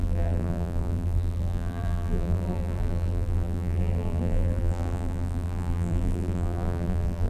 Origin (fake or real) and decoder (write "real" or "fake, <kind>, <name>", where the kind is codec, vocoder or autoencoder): fake, vocoder, BigVGAN v2